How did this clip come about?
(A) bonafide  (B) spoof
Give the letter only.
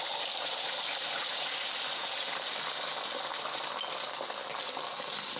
A